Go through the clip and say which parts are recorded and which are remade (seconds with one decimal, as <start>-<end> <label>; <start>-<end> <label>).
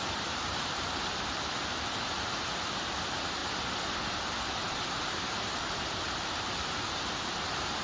0.0-3.4 remade; 3.4-4.7 recorded; 4.7-7.8 remade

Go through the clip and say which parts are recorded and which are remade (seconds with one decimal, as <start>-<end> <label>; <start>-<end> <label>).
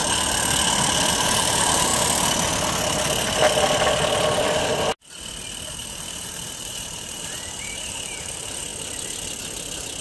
0.0-1.1 recorded; 1.1-1.9 remade; 1.9-5.7 recorded; 5.7-8.7 remade; 8.7-10.0 recorded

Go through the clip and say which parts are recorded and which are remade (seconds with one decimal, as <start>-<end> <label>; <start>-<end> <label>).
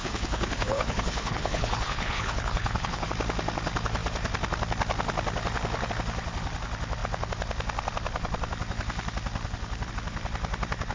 0.0-3.1 remade; 3.1-10.9 recorded